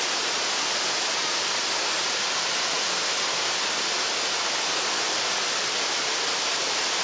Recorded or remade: recorded